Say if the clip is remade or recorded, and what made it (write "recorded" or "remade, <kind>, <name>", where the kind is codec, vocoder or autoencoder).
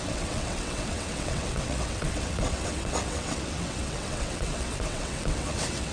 remade, vocoder, WaveNeXt